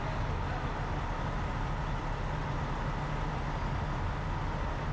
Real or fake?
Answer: real